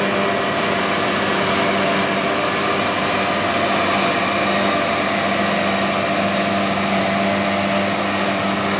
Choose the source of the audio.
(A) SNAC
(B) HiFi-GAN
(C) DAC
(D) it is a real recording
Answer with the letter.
D